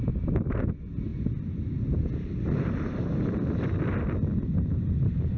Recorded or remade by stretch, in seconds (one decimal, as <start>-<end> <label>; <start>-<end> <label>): 0.0-5.4 recorded